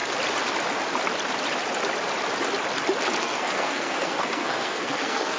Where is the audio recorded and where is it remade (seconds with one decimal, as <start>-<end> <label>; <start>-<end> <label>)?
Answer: 0.0-3.2 recorded; 3.2-5.4 remade